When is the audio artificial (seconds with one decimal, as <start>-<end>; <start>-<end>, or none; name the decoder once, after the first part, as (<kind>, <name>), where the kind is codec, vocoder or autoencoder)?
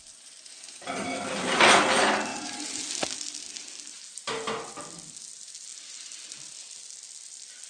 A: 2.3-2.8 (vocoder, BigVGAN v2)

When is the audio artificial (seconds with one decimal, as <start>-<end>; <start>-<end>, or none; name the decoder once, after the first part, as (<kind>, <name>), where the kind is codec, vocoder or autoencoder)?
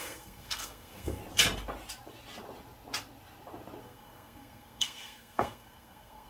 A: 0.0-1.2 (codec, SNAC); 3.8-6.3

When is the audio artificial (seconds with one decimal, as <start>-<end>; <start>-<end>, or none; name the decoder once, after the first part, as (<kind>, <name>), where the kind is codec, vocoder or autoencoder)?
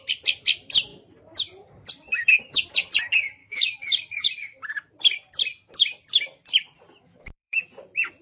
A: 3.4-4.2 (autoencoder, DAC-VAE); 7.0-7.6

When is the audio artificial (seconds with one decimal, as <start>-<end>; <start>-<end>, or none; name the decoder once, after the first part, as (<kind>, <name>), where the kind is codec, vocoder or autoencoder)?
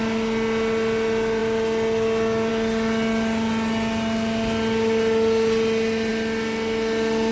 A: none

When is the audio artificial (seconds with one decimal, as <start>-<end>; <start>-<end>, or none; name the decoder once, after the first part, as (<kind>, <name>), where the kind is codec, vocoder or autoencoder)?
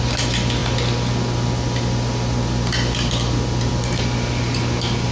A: none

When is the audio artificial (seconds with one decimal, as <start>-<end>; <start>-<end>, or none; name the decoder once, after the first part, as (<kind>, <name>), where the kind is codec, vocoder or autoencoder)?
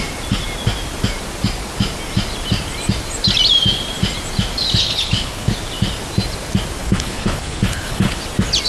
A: 4.8-5.5 (codec, HILCodec); 6.8-8.2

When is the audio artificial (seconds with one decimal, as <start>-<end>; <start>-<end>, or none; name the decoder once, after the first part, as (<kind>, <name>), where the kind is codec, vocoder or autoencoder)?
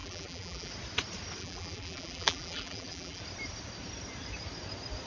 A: 0.0-0.7 (vocoder, BigVGAN v2); 1.4-3.2